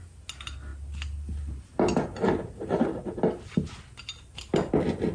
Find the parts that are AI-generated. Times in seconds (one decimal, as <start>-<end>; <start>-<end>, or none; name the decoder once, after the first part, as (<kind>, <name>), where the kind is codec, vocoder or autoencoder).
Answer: none